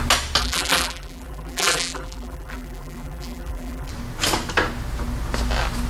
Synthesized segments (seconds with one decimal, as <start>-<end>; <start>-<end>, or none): 0.4-3.9